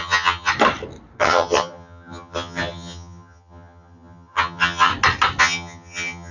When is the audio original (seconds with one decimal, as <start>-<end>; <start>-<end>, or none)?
0.5-1.2; 4.9-5.4